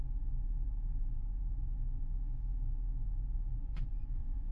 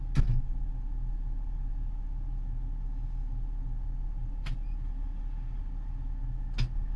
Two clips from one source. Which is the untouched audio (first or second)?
second